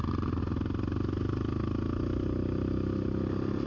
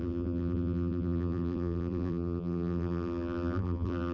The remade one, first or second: second